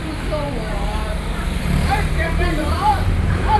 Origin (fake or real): fake